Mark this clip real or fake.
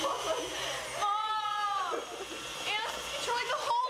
real